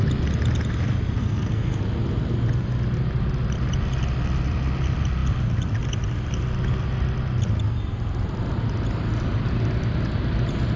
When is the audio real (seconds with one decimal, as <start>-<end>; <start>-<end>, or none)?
0.0-1.2; 1.8-10.8